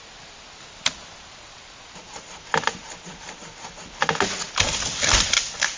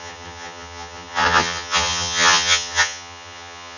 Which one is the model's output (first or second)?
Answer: second